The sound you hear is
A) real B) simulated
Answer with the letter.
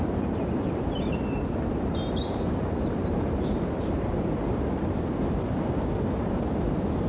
B